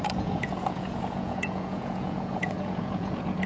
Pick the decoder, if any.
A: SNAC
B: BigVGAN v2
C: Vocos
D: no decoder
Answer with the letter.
C